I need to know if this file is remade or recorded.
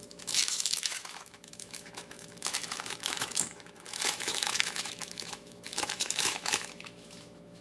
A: remade